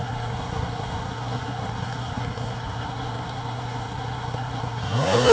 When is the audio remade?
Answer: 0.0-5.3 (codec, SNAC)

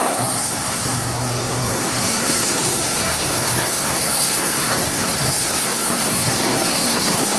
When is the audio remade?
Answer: 0.0-7.4 (codec, SNAC)

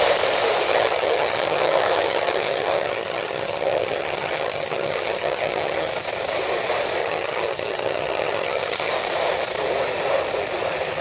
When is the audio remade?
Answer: 0.7-5.9 (vocoder, HiFi-GAN); 7.0-8.9

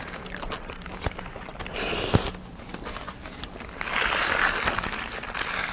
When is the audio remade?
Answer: none

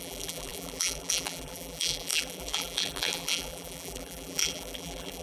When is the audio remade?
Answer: 0.0-5.2 (vocoder, BigVGAN v2)

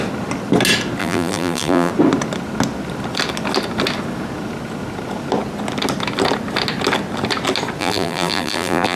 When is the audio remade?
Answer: 1.0-1.9 (vocoder, BigVGAN v2); 7.8-9.0